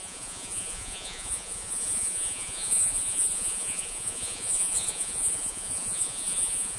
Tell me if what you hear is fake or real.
fake